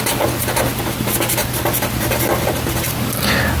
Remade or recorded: recorded